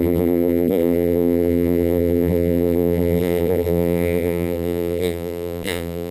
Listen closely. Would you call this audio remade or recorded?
remade